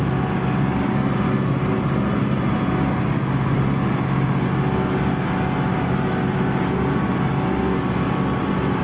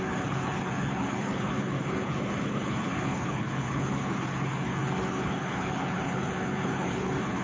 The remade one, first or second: second